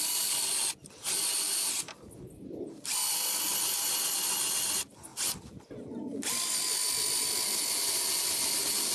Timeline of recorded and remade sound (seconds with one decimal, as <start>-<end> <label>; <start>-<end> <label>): 0.0-8.9 recorded